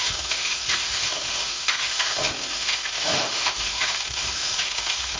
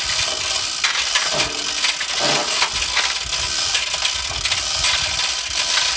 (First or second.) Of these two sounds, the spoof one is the first